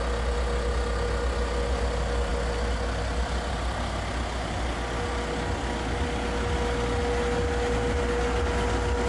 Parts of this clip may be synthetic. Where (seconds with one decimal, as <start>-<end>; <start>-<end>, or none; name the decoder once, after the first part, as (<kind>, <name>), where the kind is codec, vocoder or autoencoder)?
none